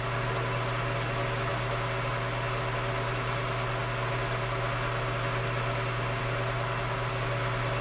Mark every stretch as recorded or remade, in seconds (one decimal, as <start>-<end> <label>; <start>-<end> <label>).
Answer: 0.0-7.8 recorded